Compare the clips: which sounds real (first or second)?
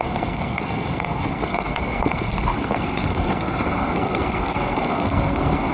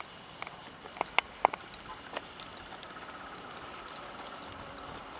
second